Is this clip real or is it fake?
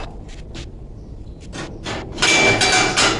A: real